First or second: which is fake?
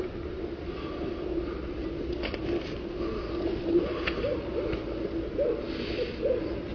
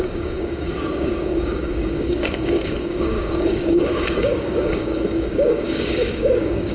second